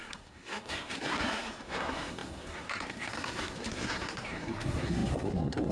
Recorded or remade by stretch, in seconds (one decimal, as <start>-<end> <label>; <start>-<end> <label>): 0.0-5.7 remade